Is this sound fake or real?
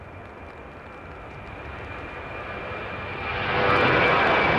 real